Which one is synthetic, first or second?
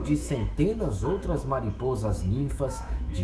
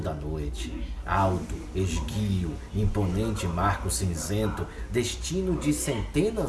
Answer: first